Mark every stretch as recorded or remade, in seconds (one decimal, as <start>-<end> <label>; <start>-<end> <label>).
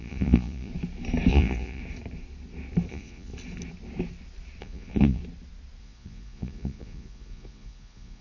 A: 0.0-0.7 remade; 0.7-1.3 recorded; 1.3-1.8 remade; 1.8-2.9 recorded; 2.9-3.3 remade; 3.3-4.6 recorded; 4.6-5.2 remade; 5.2-5.8 recorded; 5.8-8.2 remade